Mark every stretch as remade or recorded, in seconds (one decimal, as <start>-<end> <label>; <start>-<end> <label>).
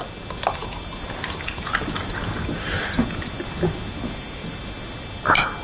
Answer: 0.0-5.6 recorded